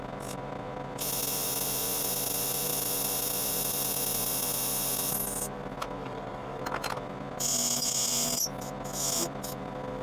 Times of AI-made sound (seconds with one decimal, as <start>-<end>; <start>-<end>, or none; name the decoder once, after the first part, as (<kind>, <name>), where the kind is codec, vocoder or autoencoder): 6.0-6.6 (codec, DAC)